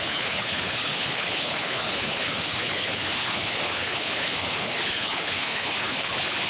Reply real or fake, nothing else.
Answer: fake